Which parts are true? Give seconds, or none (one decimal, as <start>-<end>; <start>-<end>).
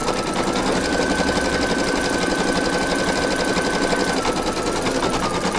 0.0-5.6